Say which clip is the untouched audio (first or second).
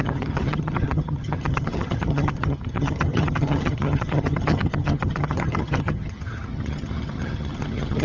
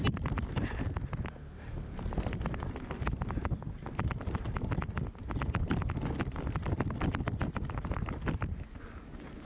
second